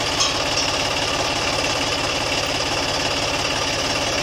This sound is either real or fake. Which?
real